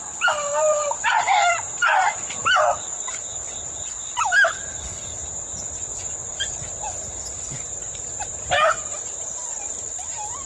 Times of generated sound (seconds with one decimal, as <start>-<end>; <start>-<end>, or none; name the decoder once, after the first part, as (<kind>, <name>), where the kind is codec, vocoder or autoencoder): 0.0-5.2 (vocoder, BigVGAN v2); 8.9-10.5